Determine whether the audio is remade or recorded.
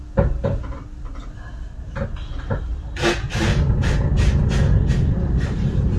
recorded